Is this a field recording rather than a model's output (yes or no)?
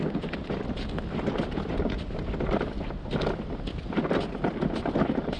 yes